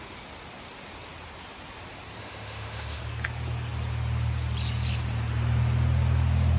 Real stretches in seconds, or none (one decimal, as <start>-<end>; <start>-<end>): 0.0-2.2; 3.0-6.6